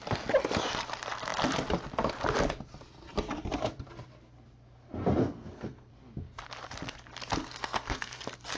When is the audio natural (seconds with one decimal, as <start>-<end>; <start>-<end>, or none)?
0.0-5.2; 5.9-7.4; 8.2-8.6